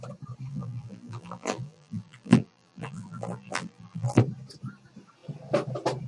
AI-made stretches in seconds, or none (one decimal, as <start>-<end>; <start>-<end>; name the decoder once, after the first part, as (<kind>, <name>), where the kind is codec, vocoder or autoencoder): 0.5-4.2 (vocoder, BigVGAN v2)